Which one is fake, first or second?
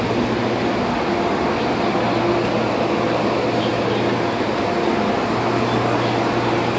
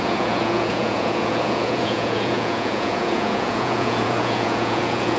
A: second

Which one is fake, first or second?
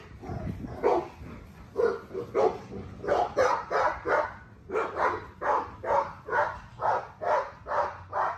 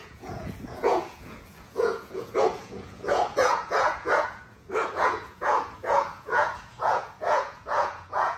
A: second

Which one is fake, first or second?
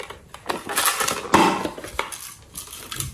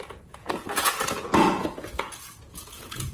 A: second